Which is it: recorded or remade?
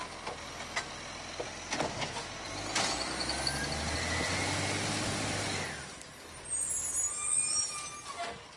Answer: recorded